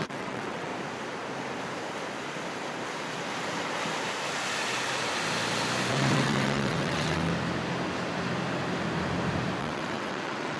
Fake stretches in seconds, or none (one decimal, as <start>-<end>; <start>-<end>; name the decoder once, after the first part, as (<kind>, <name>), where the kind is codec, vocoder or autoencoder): 0.0-0.7 (vocoder, WaveNeXt); 5.9-7.3; 9.6-10.6